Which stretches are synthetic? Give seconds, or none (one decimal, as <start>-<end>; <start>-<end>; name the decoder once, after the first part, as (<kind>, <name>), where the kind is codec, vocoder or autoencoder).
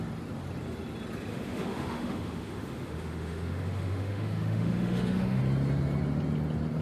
1.3-5.4 (autoencoder, DAC-VAE)